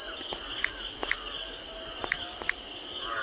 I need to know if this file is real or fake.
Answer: real